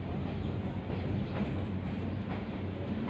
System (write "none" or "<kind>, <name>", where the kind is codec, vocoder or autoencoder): none